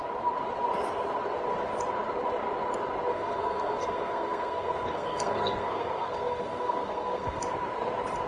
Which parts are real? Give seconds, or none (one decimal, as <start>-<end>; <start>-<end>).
0.0-3.1; 7.4-8.3